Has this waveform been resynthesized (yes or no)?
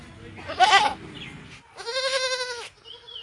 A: no